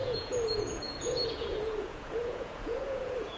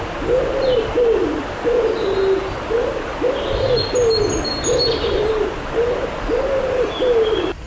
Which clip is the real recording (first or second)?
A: second